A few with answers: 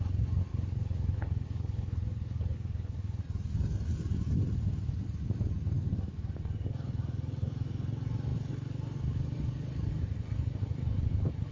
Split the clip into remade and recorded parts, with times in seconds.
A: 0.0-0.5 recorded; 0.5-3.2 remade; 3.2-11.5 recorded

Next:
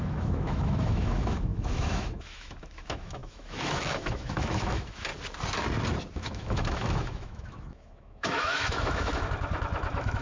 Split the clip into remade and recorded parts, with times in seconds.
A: 0.0-5.1 remade; 5.1-6.1 recorded; 6.1-10.2 remade

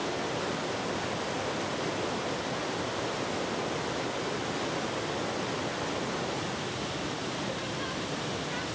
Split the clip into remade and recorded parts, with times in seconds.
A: 0.0-8.7 recorded

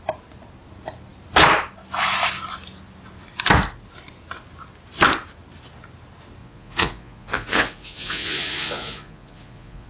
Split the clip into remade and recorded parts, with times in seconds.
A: 0.0-6.4 recorded; 6.4-9.9 remade

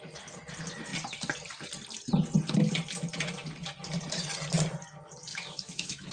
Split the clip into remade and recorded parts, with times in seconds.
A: 0.0-5.3 recorded; 5.3-6.1 remade